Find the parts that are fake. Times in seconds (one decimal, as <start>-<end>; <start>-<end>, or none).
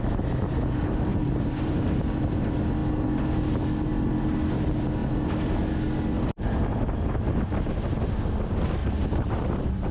1.1-1.7; 8.8-9.9